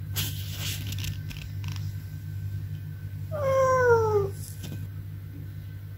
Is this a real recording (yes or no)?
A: yes